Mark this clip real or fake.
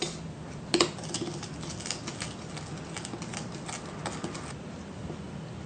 real